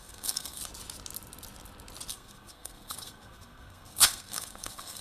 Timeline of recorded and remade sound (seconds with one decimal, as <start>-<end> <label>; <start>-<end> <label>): 0.0-0.6 remade; 0.6-2.1 recorded; 2.1-5.0 remade

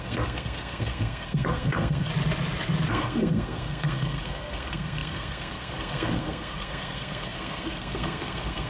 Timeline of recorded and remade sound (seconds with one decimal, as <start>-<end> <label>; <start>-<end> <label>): 0.0-2.1 remade; 2.1-2.9 recorded; 2.9-8.7 remade

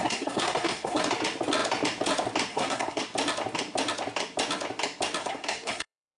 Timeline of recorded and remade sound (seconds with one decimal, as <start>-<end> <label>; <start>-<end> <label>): 0.0-1.0 remade; 1.0-2.5 recorded; 2.5-3.0 remade; 3.0-5.2 recorded; 5.2-6.2 remade

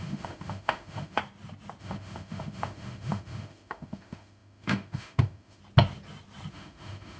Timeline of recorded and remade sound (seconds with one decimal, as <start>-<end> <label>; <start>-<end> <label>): 0.0-1.2 remade; 1.2-1.8 recorded; 1.8-5.6 remade; 5.6-6.5 recorded; 6.5-7.2 remade

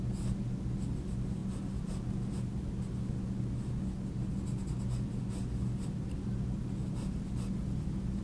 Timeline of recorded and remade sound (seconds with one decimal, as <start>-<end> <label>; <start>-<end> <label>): 0.0-8.2 recorded